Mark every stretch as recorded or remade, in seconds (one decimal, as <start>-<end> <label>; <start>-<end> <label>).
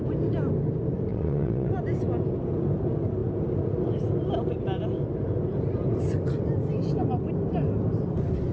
0.0-1.1 recorded; 1.1-1.7 remade; 1.7-8.5 recorded